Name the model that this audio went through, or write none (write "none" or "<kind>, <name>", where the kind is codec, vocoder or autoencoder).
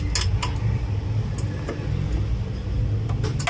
none